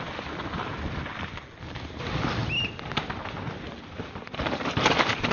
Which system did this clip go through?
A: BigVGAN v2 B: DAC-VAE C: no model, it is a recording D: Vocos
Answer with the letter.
C